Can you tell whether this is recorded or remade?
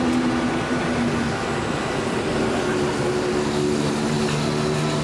recorded